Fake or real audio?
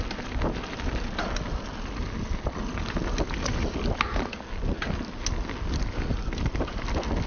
real